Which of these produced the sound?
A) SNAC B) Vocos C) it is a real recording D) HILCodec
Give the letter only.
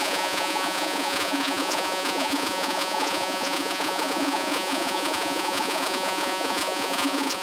B